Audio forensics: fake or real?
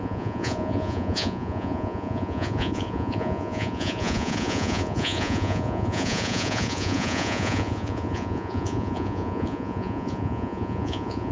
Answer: fake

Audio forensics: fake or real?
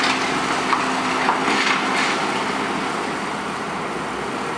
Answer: real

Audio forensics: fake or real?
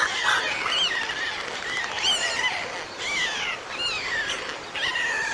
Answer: real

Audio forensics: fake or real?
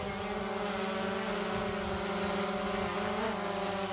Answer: real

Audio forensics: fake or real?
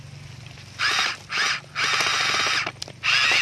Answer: real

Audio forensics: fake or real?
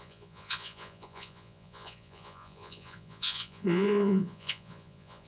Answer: fake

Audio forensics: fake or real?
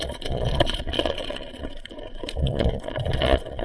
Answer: fake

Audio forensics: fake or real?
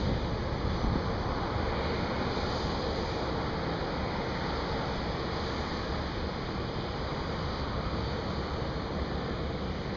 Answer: real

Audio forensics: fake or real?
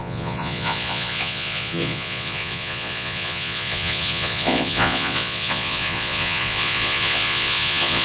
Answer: fake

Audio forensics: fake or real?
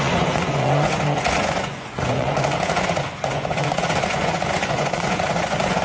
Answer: fake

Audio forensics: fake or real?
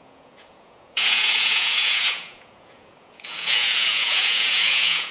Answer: fake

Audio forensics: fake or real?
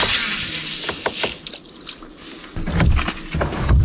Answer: real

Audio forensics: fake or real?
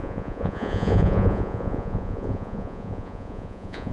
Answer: fake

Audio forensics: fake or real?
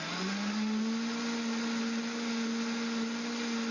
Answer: real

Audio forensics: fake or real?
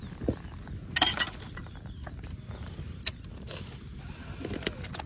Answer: real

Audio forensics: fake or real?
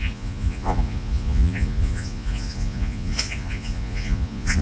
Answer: fake